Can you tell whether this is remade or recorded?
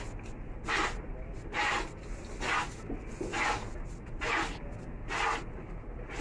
recorded